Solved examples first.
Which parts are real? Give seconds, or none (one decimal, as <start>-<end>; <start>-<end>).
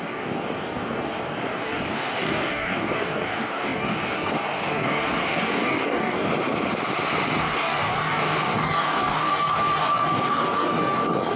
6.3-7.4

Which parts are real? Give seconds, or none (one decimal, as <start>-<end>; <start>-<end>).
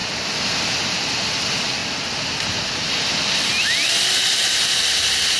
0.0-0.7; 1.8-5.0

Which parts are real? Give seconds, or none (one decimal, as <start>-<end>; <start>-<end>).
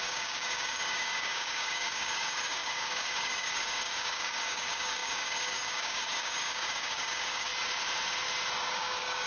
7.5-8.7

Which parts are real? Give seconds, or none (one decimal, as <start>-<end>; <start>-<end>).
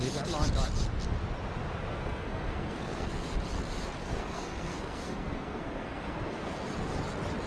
0.0-1.9; 3.1-4.0; 6.5-7.5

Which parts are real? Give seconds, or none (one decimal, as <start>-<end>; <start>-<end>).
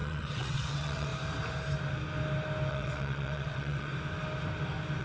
1.1-2.7; 3.9-5.0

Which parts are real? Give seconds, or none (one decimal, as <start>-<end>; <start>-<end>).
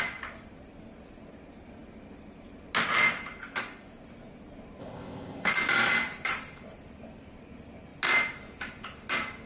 0.0-4.8; 5.5-9.5